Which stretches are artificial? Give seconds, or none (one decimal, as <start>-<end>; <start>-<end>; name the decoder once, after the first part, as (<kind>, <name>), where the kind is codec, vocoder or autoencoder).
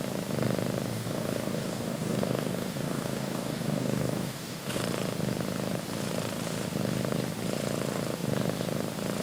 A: 0.9-4.8 (codec, DAC)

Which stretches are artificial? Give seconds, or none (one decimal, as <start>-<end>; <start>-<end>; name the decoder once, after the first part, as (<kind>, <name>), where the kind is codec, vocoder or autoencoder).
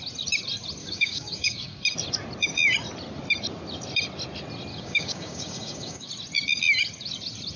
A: 0.8-1.8 (codec, DAC); 4.7-6.1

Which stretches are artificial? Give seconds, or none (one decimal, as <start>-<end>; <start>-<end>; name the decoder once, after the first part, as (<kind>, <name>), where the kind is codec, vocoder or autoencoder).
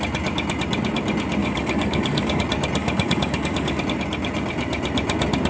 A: 1.4-2.4 (codec, DAC); 2.8-3.8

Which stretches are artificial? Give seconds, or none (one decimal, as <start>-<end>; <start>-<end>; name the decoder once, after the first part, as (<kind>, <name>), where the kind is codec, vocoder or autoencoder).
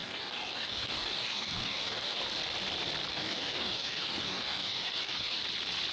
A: 0.0-2.2 (codec, DAC); 3.1-5.4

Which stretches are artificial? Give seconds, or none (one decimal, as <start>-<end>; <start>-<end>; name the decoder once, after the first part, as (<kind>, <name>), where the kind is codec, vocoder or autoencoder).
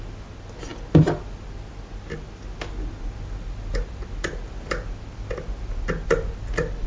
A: none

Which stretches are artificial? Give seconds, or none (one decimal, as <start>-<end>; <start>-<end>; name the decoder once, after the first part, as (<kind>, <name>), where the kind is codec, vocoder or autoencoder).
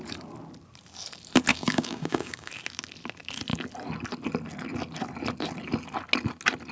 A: 1.5-2.5 (codec, DAC)